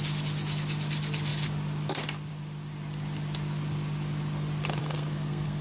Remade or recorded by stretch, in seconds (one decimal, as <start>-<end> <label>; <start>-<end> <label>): 0.0-4.8 recorded; 4.8-5.6 remade